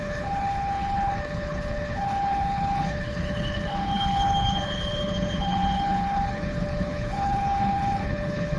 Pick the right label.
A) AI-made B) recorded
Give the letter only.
A